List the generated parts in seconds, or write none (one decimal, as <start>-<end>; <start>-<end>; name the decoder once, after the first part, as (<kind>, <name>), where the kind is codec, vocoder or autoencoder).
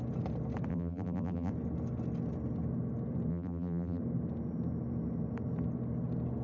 0.7-1.5 (vocoder, BigVGAN v2); 3.3-4.0